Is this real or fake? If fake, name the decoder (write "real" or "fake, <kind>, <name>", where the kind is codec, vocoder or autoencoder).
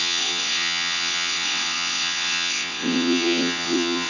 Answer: fake, vocoder, WaveNeXt